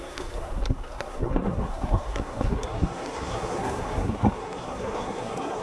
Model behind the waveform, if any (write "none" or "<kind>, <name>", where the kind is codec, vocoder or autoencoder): codec, SNAC